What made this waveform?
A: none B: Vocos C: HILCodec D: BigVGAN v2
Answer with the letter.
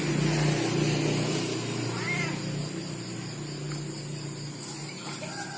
A